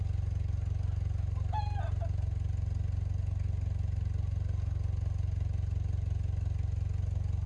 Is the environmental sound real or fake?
real